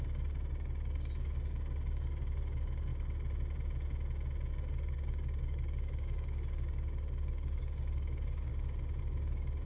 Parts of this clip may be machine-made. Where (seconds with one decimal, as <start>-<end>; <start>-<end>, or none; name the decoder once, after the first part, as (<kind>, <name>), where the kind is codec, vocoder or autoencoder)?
0.0-2.9 (codec, DAC); 4.5-8.5; 9.0-9.7

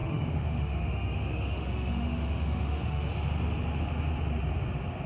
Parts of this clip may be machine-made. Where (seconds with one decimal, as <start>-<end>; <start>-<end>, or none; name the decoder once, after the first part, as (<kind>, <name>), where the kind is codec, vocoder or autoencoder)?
0.0-3.1 (autoencoder, DAC-VAE)

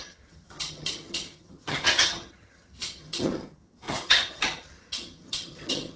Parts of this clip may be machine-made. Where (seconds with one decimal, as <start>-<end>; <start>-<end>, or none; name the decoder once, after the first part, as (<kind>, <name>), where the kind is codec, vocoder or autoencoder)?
0.0-6.0 (vocoder, HiFi-GAN)